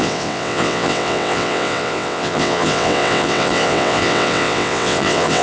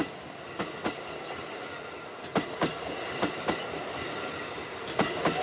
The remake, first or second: first